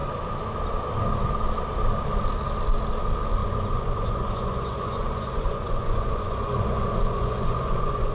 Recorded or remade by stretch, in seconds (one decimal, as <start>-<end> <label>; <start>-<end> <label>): 0.0-3.4 recorded; 3.4-8.1 remade